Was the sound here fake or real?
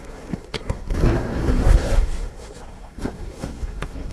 fake